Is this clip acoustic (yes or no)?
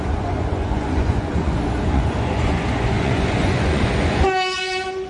no